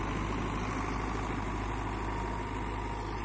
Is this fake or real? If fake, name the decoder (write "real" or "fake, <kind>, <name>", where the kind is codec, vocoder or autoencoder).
real